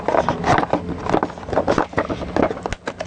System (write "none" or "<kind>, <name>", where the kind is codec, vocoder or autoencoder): none